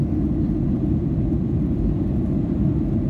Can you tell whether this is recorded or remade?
recorded